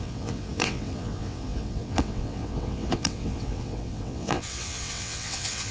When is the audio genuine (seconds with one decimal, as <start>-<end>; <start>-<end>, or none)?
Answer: none